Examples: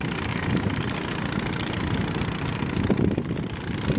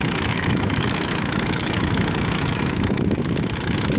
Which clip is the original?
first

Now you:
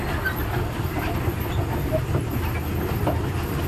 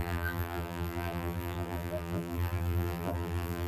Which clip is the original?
first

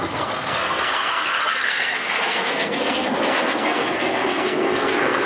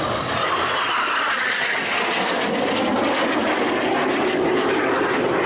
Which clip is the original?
second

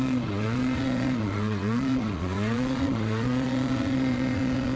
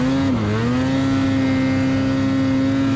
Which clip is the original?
second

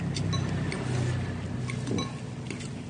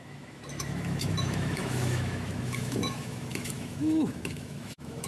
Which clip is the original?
first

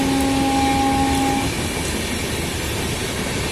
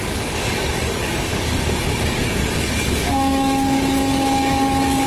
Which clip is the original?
first